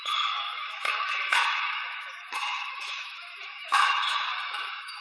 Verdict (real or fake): fake